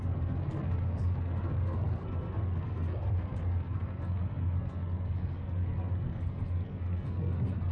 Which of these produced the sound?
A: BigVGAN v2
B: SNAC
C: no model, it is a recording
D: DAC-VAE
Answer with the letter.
B